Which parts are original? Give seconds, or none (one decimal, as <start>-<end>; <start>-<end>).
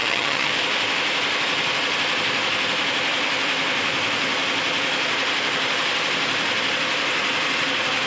0.5-8.1